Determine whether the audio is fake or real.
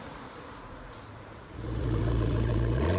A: fake